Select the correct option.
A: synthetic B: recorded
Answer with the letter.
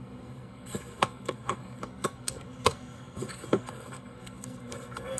A